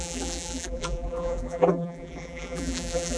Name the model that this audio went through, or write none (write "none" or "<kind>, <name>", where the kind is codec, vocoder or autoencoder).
vocoder, BigVGAN v2